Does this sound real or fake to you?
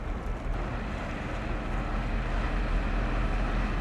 real